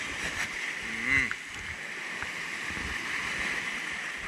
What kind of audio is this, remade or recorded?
recorded